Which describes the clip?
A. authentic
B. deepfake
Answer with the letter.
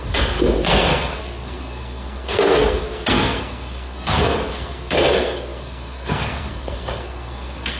B